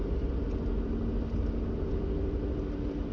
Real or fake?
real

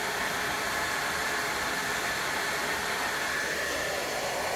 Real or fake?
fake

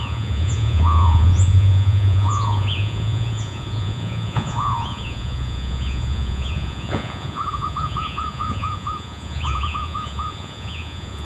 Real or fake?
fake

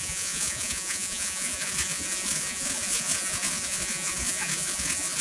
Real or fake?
fake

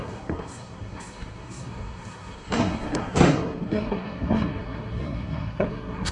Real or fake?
fake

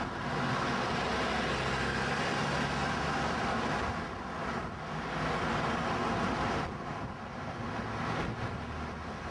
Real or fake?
real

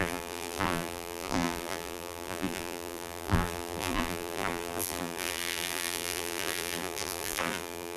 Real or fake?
fake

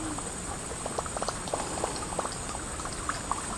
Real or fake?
real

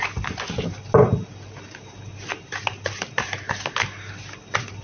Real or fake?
real